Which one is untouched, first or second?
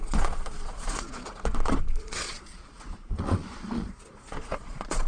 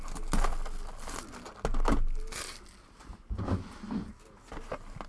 second